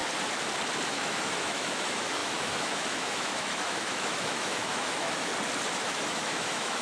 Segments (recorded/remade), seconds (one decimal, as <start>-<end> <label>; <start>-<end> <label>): 0.0-0.9 recorded; 0.9-5.3 remade; 5.3-5.8 recorded; 5.8-6.8 remade